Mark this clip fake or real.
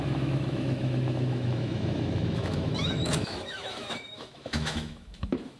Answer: fake